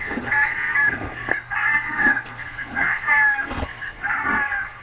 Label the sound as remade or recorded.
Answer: remade